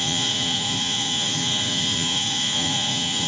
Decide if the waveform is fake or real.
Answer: fake